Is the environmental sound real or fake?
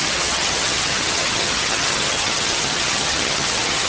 fake